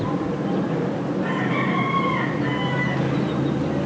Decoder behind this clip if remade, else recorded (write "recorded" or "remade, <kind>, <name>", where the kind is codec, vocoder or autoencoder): recorded